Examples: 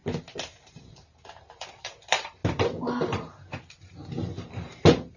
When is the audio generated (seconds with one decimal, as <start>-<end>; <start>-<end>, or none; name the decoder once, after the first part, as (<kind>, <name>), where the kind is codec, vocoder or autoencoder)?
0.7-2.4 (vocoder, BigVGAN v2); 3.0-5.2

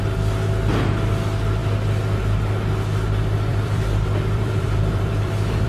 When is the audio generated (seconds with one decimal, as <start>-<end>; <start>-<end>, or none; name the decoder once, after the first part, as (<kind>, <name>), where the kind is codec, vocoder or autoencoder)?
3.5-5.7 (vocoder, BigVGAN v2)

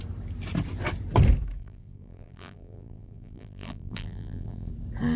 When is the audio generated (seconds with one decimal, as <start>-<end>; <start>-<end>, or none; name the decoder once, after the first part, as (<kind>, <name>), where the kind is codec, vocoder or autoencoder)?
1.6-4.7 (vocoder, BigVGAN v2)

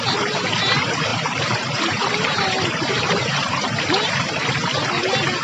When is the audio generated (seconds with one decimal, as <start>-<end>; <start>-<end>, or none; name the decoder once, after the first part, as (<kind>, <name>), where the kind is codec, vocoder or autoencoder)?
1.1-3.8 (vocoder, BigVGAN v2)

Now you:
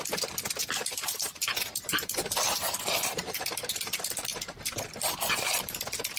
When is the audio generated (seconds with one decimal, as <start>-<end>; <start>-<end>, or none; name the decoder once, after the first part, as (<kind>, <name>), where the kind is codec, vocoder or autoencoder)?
0.6-2.2 (vocoder, BigVGAN v2)